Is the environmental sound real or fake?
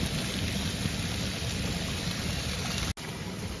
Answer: real